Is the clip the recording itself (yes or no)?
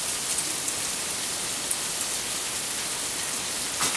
yes